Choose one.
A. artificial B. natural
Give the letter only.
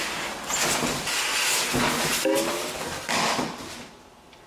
B